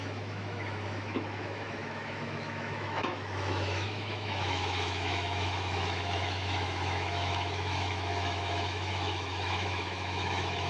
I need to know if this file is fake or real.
fake